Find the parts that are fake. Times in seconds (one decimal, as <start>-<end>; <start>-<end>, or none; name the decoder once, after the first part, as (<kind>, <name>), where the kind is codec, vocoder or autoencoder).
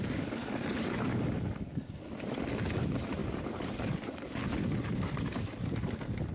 0.4-0.9 (vocoder, BigVGAN v2); 3.2-3.8